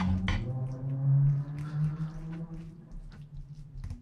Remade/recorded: recorded